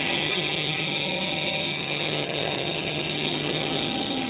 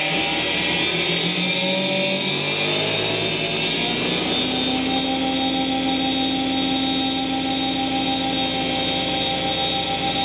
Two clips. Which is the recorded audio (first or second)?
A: second